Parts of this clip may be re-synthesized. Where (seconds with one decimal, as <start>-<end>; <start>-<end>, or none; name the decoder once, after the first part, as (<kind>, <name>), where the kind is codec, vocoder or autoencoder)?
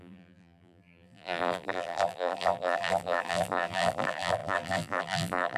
0.0-5.6 (vocoder, BigVGAN v2)